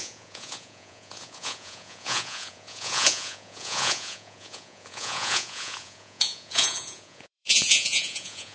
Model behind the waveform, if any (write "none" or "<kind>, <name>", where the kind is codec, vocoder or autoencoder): vocoder, Vocos